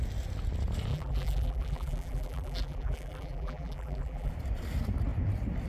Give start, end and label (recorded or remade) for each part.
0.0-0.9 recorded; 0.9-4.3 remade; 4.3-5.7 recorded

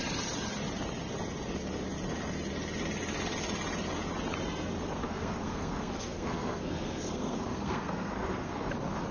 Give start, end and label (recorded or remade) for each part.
0.0-5.0 recorded; 5.0-8.7 remade; 8.7-9.1 recorded

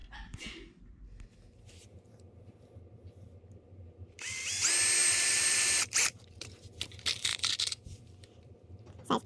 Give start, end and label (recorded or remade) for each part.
0.0-0.8 remade; 0.8-5.0 recorded; 5.0-6.5 remade; 6.5-7.3 recorded; 7.3-8.8 remade; 8.8-9.3 recorded

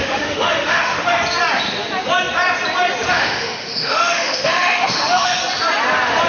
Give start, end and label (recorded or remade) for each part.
0.0-1.2 remade; 1.2-3.1 recorded; 3.1-5.4 remade; 5.4-6.3 recorded

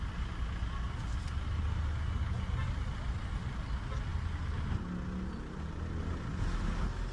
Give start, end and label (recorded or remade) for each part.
0.0-7.1 recorded

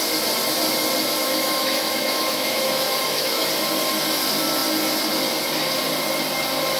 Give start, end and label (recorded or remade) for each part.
0.0-1.2 recorded; 1.2-3.5 remade; 3.5-6.8 recorded